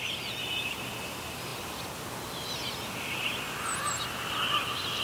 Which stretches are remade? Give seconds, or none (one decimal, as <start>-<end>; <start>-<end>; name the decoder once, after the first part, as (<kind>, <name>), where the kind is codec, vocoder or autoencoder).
none